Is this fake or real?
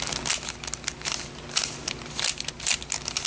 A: real